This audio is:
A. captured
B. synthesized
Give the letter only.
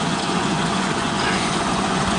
B